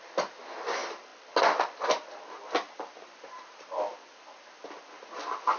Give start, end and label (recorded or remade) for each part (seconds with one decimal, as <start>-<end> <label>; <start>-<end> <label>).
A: 0.0-5.6 recorded